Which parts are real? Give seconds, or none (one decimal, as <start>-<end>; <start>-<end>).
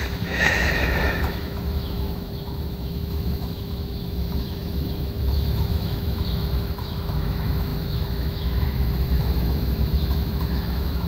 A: none